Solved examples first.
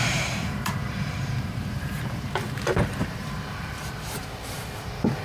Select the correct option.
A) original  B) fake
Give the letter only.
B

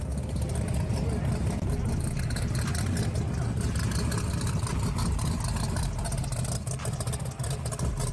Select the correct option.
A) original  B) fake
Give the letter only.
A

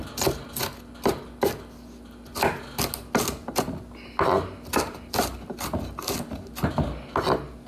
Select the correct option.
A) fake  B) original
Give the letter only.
B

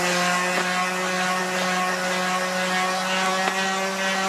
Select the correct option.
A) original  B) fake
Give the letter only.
A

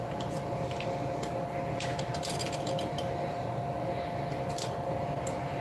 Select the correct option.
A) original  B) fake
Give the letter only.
A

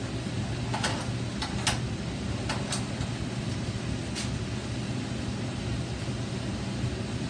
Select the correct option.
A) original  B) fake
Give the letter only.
A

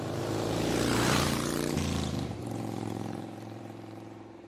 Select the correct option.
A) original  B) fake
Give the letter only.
B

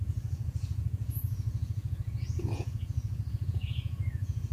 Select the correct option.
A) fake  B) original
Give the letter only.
A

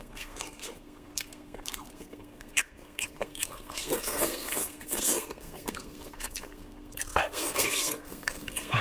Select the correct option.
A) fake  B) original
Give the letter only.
A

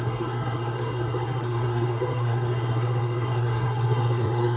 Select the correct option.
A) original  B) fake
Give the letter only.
B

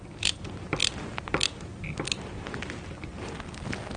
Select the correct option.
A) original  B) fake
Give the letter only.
A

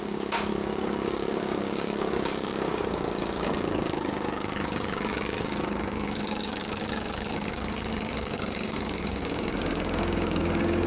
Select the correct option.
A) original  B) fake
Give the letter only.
B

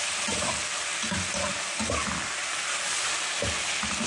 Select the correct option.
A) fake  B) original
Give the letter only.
B